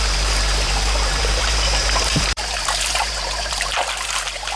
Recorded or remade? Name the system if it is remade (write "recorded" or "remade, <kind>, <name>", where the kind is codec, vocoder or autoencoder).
remade, vocoder, BigVGAN v2